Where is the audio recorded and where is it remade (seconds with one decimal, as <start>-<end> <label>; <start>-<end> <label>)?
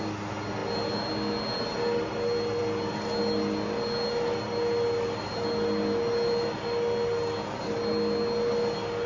0.0-9.1 recorded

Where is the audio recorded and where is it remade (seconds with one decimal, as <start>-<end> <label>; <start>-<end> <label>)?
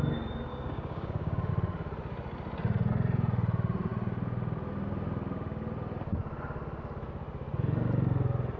0.0-0.5 recorded; 0.5-1.5 remade; 1.5-8.6 recorded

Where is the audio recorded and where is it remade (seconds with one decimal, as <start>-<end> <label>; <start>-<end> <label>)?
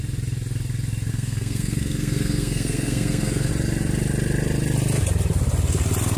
0.0-1.1 recorded; 1.1-3.5 remade; 3.5-6.2 recorded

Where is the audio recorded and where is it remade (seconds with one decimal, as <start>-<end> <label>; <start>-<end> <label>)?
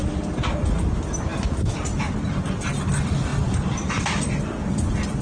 0.0-1.3 remade; 1.3-2.1 recorded; 2.1-5.2 remade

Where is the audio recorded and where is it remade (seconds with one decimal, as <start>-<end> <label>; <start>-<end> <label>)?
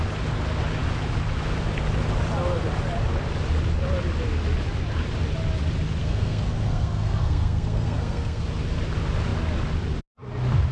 0.0-6.0 recorded; 6.0-8.4 remade; 8.4-10.7 recorded